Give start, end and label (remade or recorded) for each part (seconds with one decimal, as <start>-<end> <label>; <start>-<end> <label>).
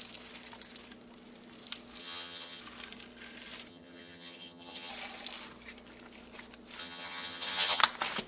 0.0-2.0 recorded; 2.0-2.6 remade; 2.6-3.7 recorded; 3.7-4.9 remade; 4.9-6.8 recorded; 6.8-7.8 remade; 7.8-8.3 recorded